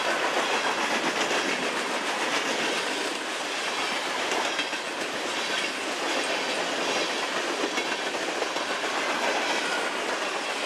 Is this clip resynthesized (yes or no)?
no